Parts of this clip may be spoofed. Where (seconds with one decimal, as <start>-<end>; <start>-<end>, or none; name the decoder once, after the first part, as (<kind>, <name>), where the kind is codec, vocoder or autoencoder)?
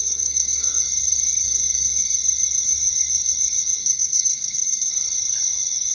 0.0-0.7 (codec, SNAC); 3.8-4.9